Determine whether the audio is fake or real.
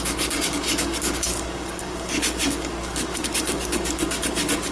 fake